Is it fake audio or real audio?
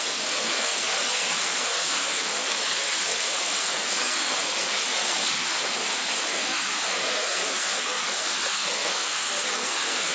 fake